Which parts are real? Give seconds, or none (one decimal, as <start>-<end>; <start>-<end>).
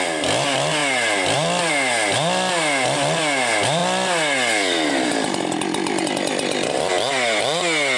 0.0-8.0